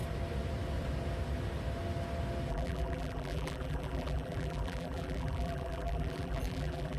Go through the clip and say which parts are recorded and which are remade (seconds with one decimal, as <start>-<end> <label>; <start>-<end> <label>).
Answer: 0.0-2.5 recorded; 2.5-7.0 remade